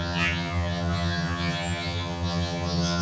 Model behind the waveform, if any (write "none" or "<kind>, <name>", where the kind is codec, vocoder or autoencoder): vocoder, HiFi-GAN